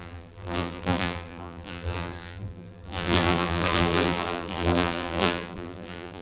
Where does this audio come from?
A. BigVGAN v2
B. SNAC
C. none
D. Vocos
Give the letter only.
A